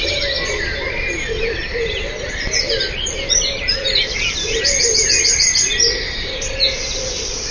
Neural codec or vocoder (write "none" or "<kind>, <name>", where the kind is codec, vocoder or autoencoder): none